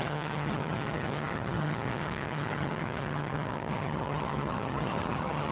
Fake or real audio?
fake